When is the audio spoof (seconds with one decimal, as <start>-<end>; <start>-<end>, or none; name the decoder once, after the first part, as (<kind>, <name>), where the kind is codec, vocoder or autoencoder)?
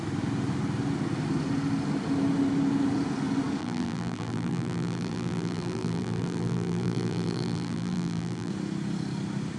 3.6-8.5 (vocoder, BigVGAN v2)